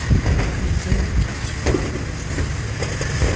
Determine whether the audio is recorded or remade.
recorded